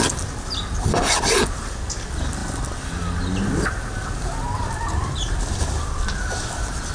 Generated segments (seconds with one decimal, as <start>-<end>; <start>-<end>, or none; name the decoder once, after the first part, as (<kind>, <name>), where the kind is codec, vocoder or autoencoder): none